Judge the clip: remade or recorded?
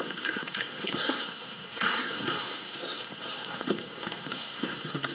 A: remade